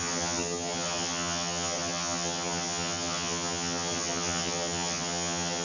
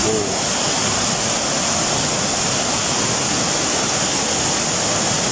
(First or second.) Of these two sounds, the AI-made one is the first